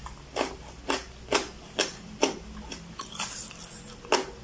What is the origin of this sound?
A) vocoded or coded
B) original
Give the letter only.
B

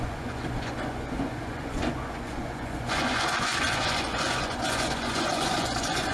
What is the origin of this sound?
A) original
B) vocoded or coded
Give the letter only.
B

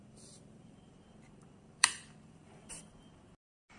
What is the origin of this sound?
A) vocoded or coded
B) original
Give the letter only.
A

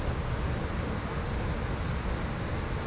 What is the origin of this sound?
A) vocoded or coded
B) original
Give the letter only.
B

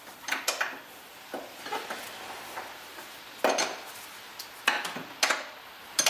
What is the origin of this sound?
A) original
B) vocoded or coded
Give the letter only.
A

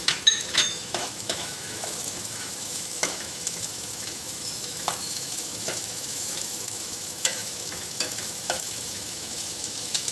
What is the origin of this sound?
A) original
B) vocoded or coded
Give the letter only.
B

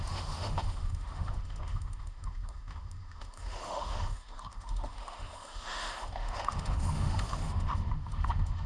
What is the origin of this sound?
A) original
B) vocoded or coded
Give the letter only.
B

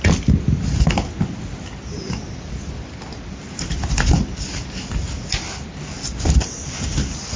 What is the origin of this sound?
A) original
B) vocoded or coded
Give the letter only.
A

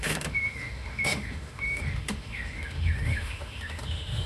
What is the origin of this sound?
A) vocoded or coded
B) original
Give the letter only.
A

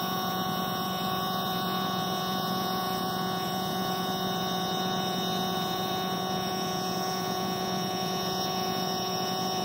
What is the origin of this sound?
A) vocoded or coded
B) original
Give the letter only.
A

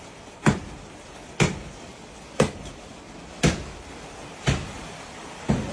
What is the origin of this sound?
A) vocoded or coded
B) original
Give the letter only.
A